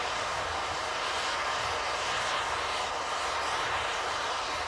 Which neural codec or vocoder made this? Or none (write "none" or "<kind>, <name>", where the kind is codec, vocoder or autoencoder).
none